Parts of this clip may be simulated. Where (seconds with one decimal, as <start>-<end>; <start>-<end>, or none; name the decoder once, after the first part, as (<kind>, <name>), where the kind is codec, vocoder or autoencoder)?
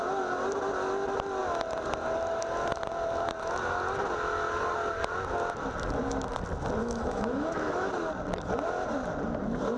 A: 6.8-7.9 (autoencoder, DAC-VAE)